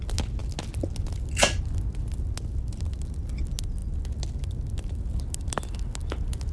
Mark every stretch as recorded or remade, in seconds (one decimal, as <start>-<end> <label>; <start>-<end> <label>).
0.0-6.5 recorded